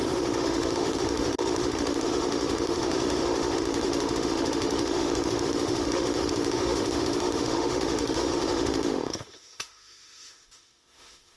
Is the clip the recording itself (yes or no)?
no